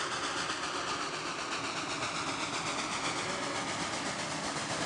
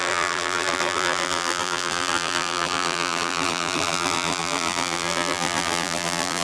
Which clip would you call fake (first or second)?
second